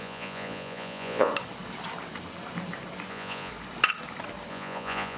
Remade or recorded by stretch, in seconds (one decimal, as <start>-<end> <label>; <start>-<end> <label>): 0.0-1.3 remade; 1.3-3.1 recorded; 3.1-3.5 remade; 3.5-4.5 recorded; 4.5-5.2 remade